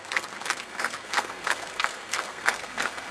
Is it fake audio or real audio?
fake